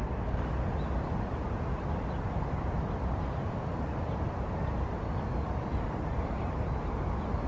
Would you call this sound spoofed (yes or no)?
no